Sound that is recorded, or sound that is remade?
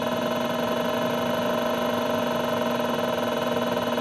recorded